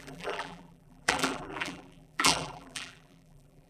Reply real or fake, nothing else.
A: fake